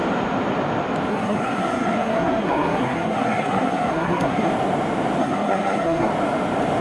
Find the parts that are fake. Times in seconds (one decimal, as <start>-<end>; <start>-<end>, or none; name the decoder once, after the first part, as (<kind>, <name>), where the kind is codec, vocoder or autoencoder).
1.1-4.5 (codec, SNAC); 5.2-6.1